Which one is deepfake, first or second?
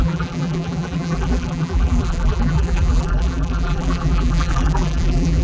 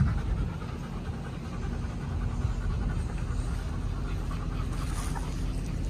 first